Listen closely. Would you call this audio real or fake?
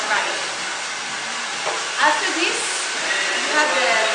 real